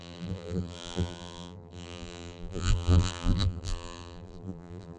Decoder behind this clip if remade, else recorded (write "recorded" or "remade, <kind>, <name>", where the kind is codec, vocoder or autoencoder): remade, vocoder, BigVGAN v2